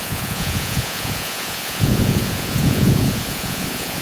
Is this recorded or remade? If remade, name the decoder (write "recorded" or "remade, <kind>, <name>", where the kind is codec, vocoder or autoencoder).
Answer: remade, vocoder, Vocos